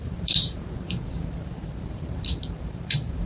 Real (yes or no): no